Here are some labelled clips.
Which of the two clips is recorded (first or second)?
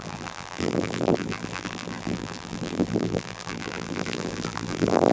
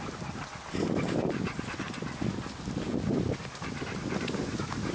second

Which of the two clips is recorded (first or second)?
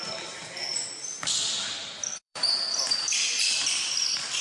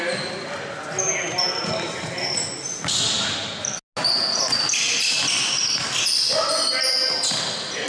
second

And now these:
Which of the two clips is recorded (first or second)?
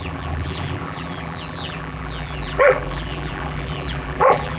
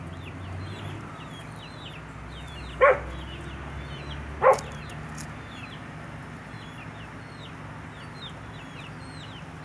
second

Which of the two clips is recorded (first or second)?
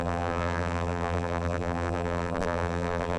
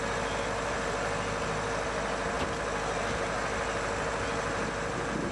second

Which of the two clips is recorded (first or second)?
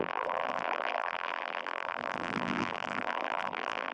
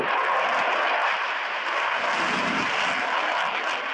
second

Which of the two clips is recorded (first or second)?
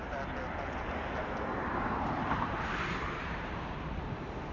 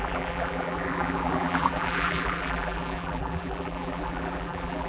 first